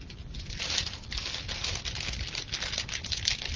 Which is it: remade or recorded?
recorded